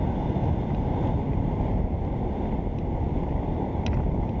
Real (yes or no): yes